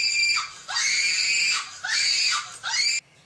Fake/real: fake